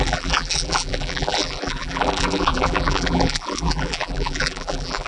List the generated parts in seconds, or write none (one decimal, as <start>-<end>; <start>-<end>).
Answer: 0.0-5.1